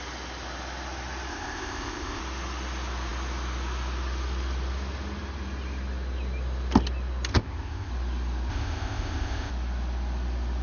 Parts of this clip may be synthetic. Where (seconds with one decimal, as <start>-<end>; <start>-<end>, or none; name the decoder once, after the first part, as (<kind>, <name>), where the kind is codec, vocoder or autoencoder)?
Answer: 1.3-2.2 (codec, ZipCodec); 7.3-7.9; 8.5-9.5